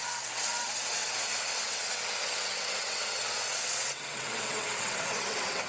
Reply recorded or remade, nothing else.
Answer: remade